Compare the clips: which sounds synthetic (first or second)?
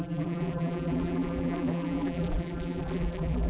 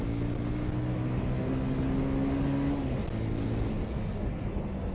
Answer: first